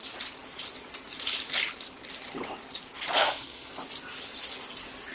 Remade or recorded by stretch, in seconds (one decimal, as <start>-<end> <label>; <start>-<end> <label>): 0.0-3.2 recorded; 3.2-3.7 remade; 3.7-5.1 recorded